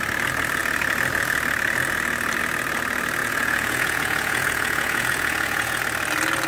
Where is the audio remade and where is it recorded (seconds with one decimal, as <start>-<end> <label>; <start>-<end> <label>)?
0.0-3.2 recorded; 3.2-5.8 remade; 5.8-6.5 recorded